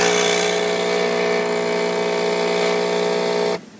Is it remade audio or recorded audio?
recorded